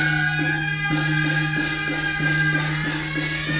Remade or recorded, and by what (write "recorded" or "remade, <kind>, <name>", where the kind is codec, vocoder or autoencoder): recorded